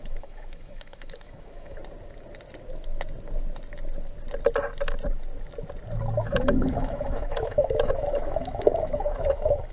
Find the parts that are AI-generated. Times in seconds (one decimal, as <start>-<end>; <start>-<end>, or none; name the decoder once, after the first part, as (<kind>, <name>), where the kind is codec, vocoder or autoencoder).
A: 0.0-1.8 (autoencoder, DAC-VAE); 6.2-9.7